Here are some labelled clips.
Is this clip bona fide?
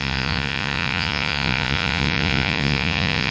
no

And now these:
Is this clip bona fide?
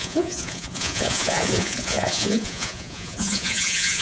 no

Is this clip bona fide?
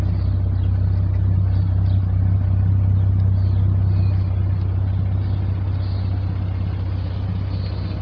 yes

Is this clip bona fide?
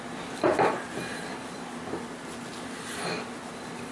yes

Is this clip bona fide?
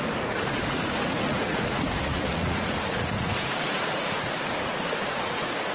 no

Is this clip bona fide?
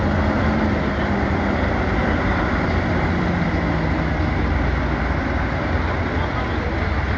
yes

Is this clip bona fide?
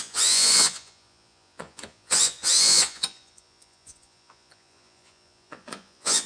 no